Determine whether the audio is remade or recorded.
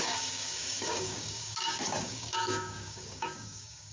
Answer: remade